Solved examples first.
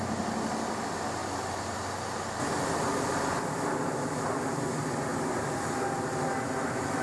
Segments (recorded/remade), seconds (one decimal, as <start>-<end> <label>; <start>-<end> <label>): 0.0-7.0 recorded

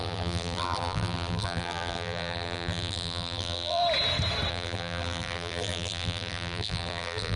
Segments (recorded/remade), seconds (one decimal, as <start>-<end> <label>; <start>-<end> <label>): 0.0-3.8 remade; 3.8-4.5 recorded; 4.5-7.4 remade

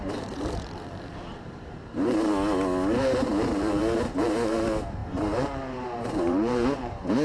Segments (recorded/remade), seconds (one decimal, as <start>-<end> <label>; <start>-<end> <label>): 0.0-2.3 remade; 2.3-3.0 recorded; 3.0-7.2 remade